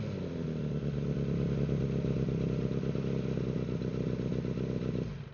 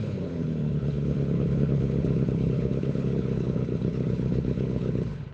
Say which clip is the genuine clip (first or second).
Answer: first